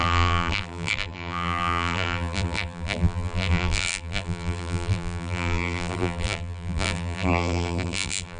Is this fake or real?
fake